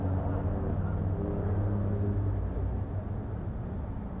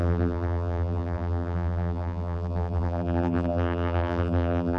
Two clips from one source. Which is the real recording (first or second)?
first